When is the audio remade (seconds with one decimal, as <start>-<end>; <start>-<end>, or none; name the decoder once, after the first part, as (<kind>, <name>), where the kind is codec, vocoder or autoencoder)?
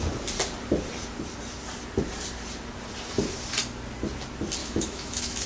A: 4.6-5.5 (autoencoder, DAC-VAE)